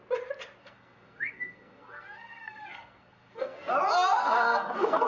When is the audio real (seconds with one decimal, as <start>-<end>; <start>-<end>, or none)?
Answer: 0.0-0.6; 3.7-4.2